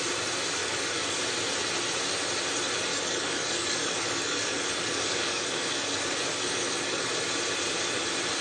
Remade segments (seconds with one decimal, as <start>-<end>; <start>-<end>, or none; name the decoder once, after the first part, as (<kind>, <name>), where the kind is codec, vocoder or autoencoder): 0.6-1.2 (codec, DAC); 2.9-7.0